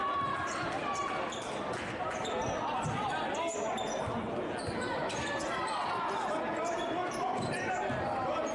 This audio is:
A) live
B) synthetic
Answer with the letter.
A